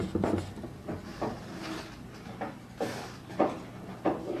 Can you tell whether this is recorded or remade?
recorded